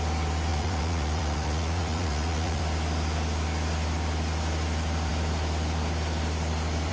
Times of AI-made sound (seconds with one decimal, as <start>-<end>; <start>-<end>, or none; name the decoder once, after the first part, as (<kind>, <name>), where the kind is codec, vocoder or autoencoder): 0.5-2.6 (vocoder, Vocos)